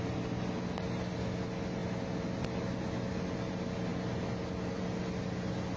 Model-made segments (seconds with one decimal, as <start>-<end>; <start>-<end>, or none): none